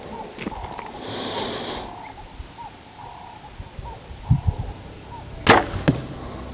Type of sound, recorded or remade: recorded